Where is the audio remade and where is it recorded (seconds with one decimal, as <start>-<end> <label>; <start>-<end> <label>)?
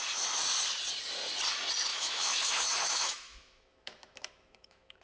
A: 0.0-1.9 recorded; 1.9-5.0 remade